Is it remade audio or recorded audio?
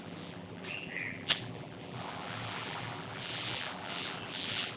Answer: remade